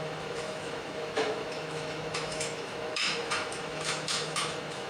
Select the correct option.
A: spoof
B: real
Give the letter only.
A